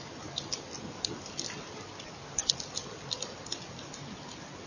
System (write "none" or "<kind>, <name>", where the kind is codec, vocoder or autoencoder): none